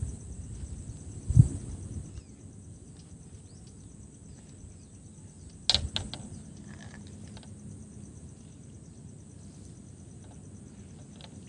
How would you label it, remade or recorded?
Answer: recorded